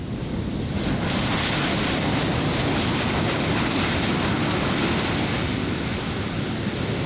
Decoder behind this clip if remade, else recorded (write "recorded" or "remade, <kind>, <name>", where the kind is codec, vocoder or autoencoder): recorded